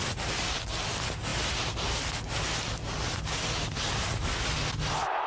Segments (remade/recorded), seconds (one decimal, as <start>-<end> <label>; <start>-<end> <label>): 0.0-5.3 recorded